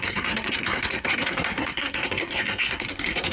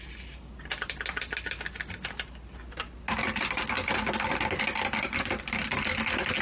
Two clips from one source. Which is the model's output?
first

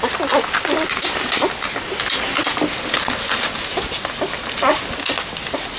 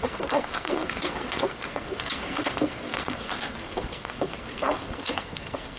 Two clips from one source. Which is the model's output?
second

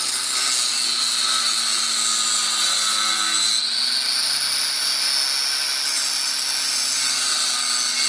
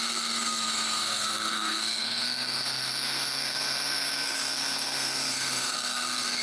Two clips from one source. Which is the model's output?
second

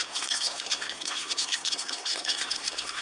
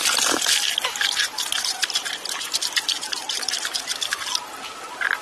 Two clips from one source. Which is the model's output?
first